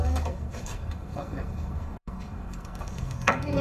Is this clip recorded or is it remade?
remade